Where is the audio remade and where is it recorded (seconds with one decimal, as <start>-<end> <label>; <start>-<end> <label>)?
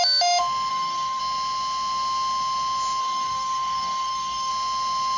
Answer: 0.0-0.7 recorded; 0.7-1.2 remade; 1.2-3.0 recorded; 3.0-4.5 remade; 4.5-5.2 recorded